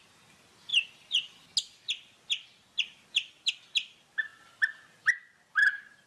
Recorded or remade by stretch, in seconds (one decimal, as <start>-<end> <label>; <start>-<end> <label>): 0.0-6.1 recorded